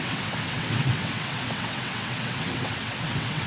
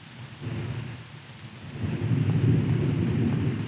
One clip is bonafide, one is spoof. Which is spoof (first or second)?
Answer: first